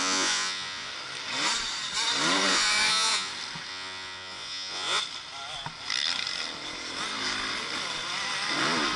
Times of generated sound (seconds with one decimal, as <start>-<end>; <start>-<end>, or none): 0.0-0.9; 2.5-3.3; 3.7-5.0